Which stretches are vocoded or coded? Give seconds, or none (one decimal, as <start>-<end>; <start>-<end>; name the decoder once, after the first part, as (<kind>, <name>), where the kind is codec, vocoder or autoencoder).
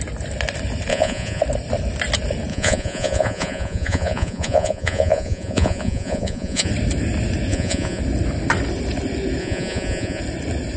0.9-1.4 (vocoder, Vocos); 2.5-6.7; 7.5-8.0; 9.4-10.2